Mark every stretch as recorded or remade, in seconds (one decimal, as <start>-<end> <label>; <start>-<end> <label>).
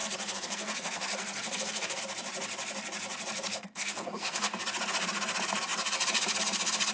0.0-2.0 remade; 2.0-3.5 recorded; 3.5-4.5 remade; 4.5-6.9 recorded